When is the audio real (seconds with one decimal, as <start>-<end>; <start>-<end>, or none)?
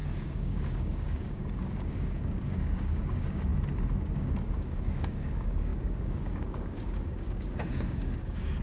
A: 3.5-4.1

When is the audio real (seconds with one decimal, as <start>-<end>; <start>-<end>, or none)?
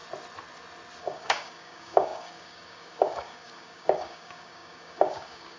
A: 0.0-1.0